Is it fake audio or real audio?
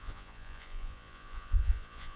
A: fake